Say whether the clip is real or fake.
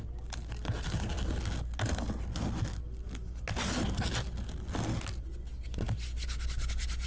real